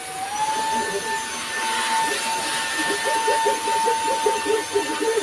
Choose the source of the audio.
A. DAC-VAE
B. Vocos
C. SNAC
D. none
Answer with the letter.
D